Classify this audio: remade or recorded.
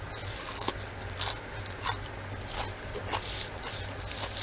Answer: recorded